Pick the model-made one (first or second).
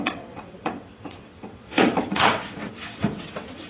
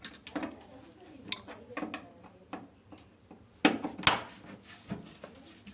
first